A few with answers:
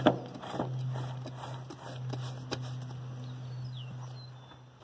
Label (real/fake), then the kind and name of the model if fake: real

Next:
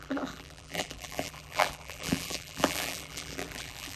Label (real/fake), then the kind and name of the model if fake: fake, vocoder, BigVGAN v2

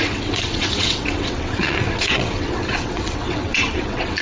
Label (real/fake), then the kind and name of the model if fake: fake, vocoder, WaveNeXt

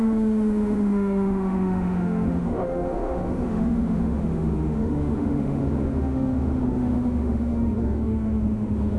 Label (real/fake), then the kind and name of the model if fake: fake, autoencoder, DAC-VAE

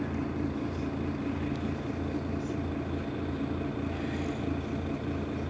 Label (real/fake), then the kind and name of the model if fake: real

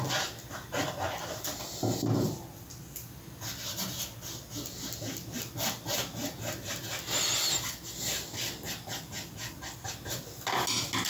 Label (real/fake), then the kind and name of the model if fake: real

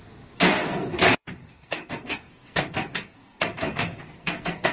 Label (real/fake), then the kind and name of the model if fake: fake, codec, SNAC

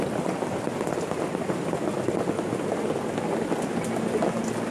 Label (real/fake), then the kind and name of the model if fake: real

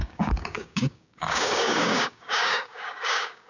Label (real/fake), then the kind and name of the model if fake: fake, codec, DAC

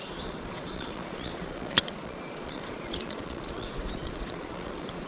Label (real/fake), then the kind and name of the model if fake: fake, vocoder, Vocos